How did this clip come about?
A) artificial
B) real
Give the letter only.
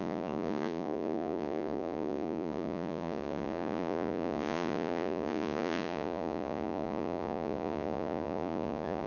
A